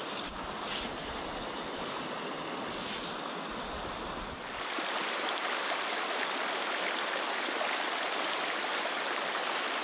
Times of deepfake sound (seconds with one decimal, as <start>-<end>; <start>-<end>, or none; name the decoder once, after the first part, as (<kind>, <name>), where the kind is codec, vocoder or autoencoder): none